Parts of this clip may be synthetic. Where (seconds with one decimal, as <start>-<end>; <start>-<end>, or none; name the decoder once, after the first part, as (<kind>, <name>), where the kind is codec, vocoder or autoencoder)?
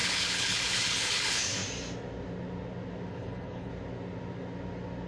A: 0.0-1.6 (codec, HILCodec); 3.1-3.7